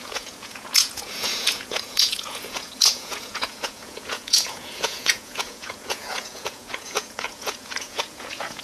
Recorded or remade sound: remade